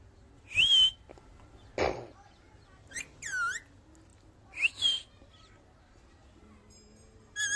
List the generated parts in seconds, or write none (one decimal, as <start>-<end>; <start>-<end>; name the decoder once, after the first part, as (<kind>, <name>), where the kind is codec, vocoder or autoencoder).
none